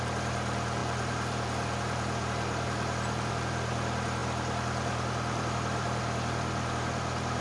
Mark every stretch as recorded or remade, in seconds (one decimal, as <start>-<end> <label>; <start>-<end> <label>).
0.0-4.2 recorded; 4.2-7.4 remade